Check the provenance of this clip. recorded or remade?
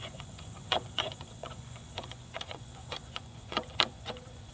remade